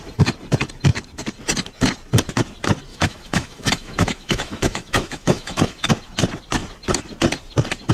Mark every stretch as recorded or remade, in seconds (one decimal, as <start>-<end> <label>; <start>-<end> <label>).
0.0-2.9 recorded; 2.9-5.9 remade; 5.9-7.9 recorded